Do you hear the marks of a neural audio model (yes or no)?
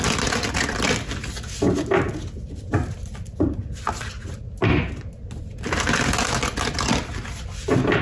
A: no